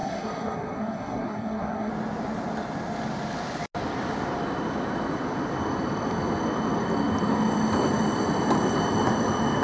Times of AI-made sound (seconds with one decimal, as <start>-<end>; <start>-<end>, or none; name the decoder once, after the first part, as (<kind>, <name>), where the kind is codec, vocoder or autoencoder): 0.0-1.9 (codec, SNAC)